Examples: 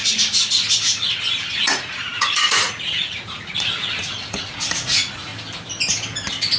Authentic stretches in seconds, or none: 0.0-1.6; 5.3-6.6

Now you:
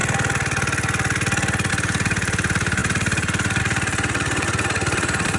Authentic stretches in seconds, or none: 0.0-1.7

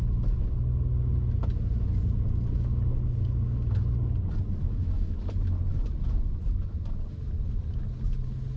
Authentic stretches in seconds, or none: 0.0-4.6; 5.2-8.6

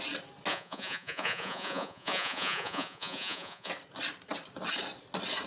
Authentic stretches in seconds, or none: 0.0-0.5; 3.7-5.5